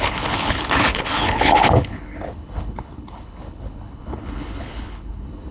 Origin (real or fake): fake